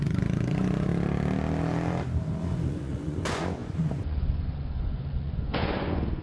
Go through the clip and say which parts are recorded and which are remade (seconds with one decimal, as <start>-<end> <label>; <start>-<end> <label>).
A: 0.0-0.9 remade; 0.9-2.4 recorded; 2.4-6.2 remade